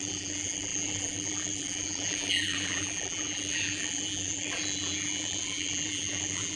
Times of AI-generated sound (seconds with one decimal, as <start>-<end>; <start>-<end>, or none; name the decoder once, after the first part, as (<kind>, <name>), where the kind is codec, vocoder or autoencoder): 0.0-6.6 (vocoder, BigVGAN v2)